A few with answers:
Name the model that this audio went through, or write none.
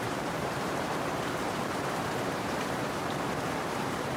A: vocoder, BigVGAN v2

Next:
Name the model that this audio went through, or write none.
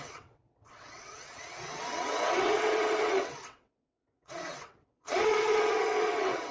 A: vocoder, WaveNeXt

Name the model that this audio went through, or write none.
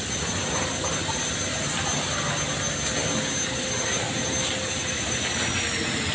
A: none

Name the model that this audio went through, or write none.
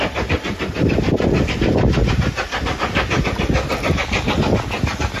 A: none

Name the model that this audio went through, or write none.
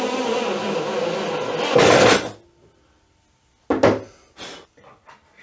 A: none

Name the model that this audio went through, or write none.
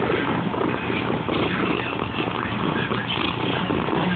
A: none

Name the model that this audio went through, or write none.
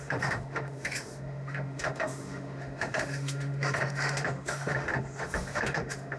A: autoencoder, DAC-VAE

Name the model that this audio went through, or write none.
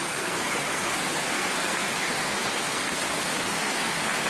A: codec, SNAC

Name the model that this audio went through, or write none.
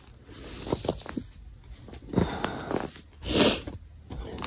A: none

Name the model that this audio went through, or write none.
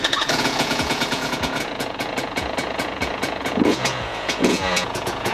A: vocoder, Vocos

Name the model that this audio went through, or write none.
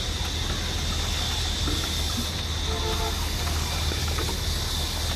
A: none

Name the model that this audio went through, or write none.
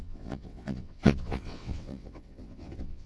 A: vocoder, WaveNeXt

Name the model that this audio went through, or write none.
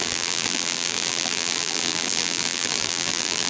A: vocoder, BigVGAN v2